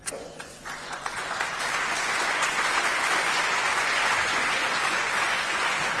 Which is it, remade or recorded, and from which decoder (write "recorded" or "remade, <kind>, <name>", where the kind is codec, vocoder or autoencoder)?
remade, vocoder, Vocos